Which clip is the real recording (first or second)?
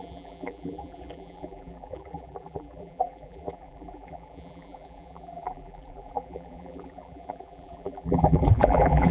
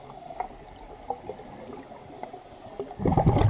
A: second